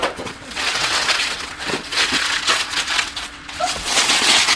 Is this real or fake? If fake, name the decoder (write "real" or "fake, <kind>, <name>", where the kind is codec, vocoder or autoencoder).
fake, vocoder, WaveNeXt